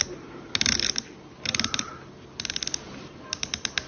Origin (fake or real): real